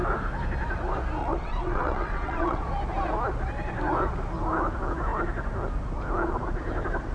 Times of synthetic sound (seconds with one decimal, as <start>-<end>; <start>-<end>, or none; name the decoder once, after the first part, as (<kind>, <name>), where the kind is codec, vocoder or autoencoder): 1.2-2.6 (vocoder, WaveNeXt)